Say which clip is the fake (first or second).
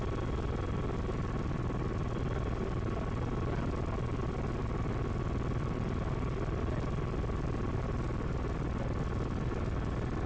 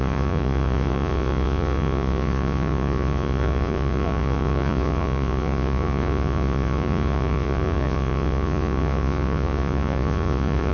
second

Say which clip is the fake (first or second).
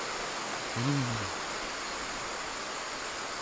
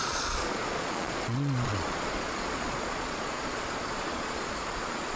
second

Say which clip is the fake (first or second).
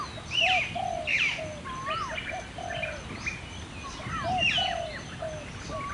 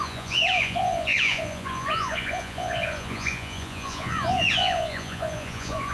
second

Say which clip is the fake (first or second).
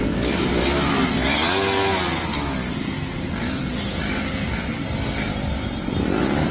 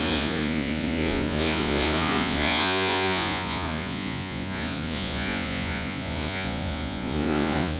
second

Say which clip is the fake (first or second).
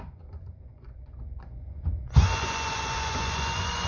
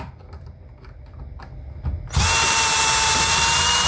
first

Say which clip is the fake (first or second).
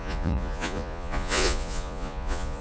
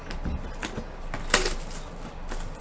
first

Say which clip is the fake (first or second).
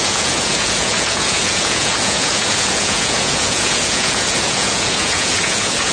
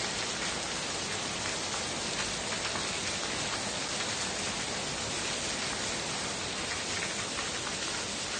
first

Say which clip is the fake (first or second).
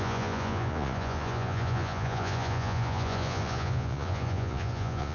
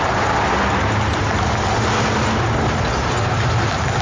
first